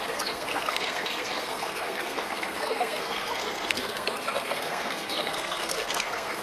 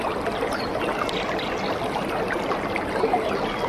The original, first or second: second